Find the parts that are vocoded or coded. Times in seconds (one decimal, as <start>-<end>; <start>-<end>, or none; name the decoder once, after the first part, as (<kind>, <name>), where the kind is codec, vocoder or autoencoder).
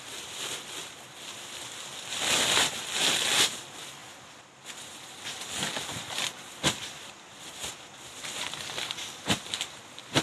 0.0-4.0 (vocoder, BigVGAN v2); 4.9-10.2